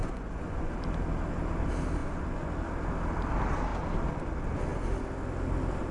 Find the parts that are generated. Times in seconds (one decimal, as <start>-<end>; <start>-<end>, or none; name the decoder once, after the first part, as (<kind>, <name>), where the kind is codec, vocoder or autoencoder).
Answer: 0.0-0.7 (vocoder, Vocos); 2.0-2.5

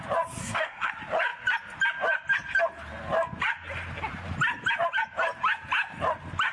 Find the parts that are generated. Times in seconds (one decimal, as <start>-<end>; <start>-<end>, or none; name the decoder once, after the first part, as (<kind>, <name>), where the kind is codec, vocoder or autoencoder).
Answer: 0.4-0.9 (codec, SNAC)

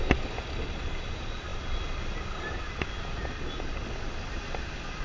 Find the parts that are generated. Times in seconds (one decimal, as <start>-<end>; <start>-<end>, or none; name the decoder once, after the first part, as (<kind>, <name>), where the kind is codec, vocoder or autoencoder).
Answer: none